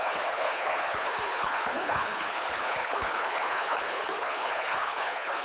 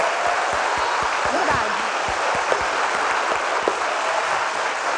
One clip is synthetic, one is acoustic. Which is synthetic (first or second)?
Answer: first